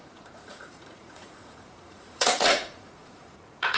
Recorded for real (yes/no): no